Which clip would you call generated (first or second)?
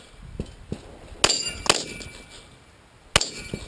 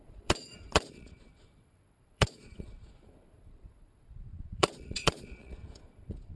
second